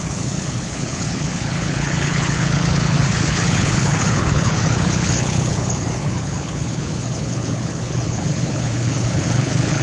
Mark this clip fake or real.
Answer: fake